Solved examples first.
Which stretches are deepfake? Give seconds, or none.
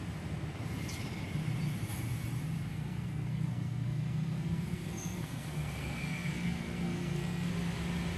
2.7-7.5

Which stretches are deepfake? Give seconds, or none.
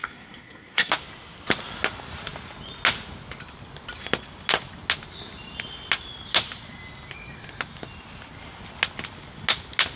0.0-0.9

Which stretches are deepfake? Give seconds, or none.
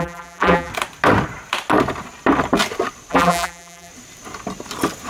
0.0-0.7; 3.1-3.9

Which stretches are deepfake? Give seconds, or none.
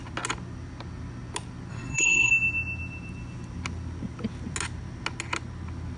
1.7-2.3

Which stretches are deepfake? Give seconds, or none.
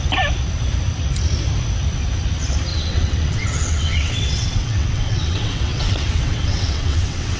2.7-7.4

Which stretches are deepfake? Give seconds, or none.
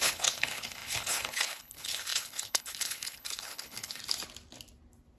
0.0-4.0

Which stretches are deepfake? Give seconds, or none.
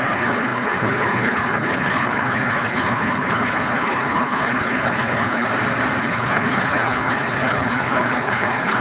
0.0-5.5; 6.0-8.8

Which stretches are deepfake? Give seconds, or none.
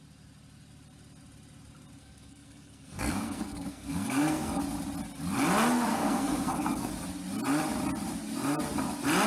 2.0-4.6; 5.9-6.9